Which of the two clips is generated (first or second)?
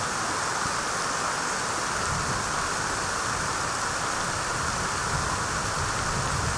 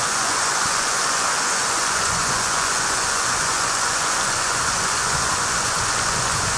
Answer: second